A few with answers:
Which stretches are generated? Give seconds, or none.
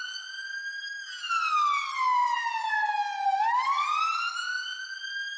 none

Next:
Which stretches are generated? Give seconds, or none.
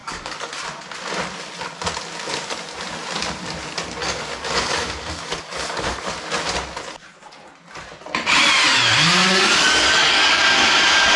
0.0-0.5 (codec, DAC); 4.0-6.1; 9.2-10.4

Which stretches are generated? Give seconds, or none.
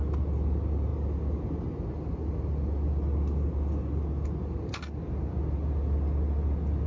none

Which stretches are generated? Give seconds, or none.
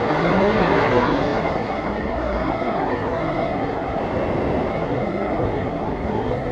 0.0-4.0 (codec, SNAC); 4.7-6.5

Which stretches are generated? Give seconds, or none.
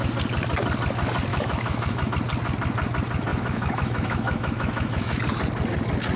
1.3-2.1 (autoencoder, DAC-VAE); 3.3-5.2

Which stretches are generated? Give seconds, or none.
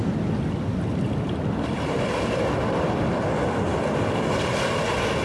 none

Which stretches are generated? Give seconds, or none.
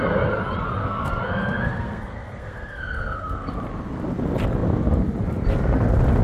0.8-3.5 (codec, SNAC)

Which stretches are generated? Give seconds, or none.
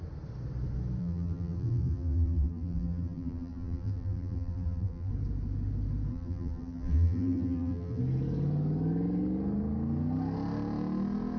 1.0-5.1 (vocoder, BigVGAN v2); 6.1-8.0